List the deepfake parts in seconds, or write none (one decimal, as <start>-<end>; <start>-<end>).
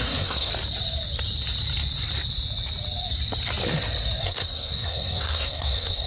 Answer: 0.0-0.5; 4.2-6.1